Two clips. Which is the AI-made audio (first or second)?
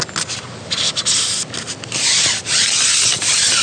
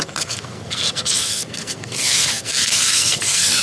second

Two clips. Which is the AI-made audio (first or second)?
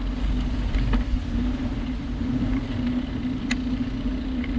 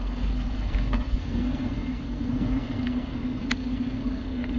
second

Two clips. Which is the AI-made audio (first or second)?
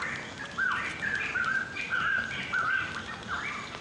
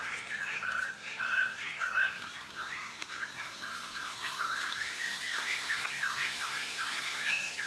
second